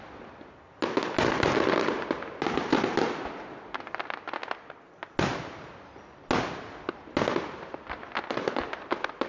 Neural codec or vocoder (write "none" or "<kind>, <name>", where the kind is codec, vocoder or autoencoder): none